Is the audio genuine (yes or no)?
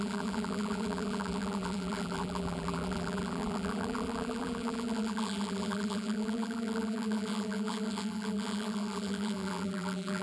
no